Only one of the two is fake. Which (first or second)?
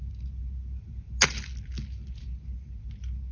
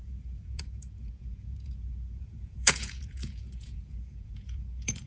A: second